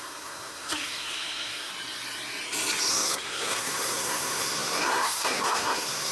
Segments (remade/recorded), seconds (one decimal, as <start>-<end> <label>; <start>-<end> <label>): 0.0-1.7 remade; 1.7-2.9 recorded; 2.9-6.1 remade